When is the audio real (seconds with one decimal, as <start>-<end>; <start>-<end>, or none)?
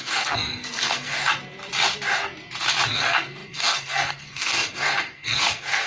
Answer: 1.3-2.9